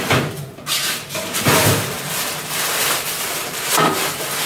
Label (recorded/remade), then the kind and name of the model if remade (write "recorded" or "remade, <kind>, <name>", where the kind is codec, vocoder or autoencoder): remade, vocoder, BigVGAN v2